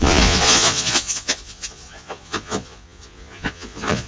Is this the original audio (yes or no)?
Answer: no